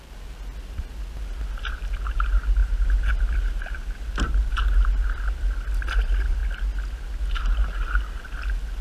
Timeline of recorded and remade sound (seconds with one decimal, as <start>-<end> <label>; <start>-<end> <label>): 0.0-2.6 recorded; 2.6-4.1 remade; 4.1-8.8 recorded